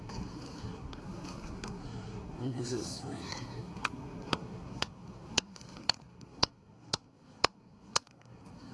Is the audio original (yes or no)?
no